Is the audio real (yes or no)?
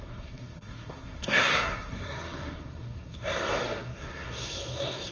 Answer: no